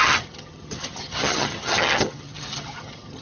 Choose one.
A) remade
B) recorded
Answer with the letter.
A